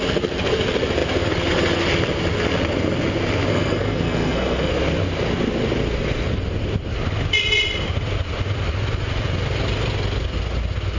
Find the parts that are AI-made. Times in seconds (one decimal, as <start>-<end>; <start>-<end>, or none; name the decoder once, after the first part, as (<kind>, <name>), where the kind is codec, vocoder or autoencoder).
3.5-4.7 (codec, SNAC)